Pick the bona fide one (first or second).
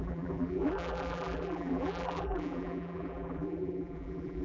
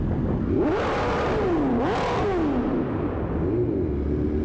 second